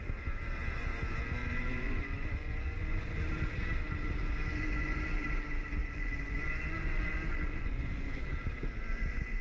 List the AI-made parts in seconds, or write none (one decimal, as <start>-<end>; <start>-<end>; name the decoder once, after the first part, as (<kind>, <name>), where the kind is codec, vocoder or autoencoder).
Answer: 1.4-3.2 (vocoder, Vocos); 4.5-5.0; 5.8-8.2